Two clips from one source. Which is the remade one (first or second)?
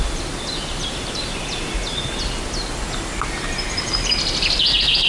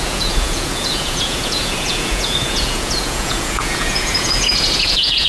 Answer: second